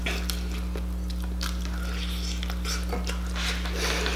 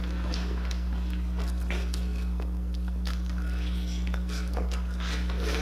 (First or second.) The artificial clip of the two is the second